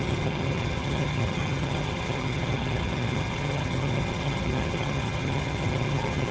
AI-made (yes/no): yes